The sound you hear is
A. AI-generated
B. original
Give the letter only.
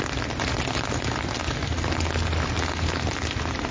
B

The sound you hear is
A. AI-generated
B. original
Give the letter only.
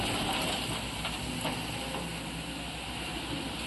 B